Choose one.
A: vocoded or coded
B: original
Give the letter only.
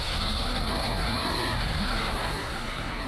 A